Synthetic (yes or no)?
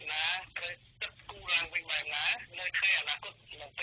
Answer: no